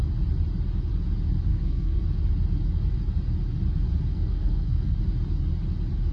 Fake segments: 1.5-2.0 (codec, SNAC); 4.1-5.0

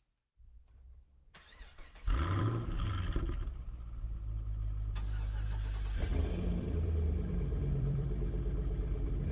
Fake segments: 6.1-8.2 (vocoder, BigVGAN v2)

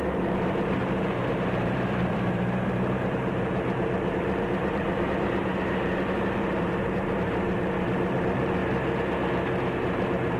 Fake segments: 0.0-8.6 (vocoder, BigVGAN v2); 9.8-10.4

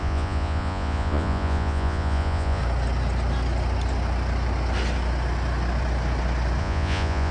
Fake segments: 0.0-2.6 (vocoder, Vocos); 6.6-7.3